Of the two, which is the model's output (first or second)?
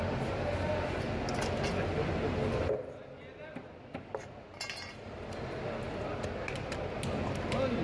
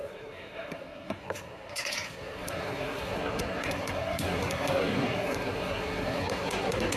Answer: second